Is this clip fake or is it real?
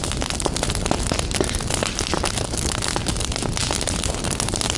fake